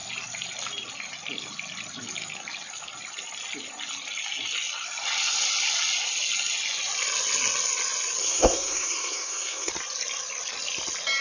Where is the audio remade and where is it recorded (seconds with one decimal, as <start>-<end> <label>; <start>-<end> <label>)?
0.0-8.2 recorded; 8.2-9.7 remade; 9.7-11.2 recorded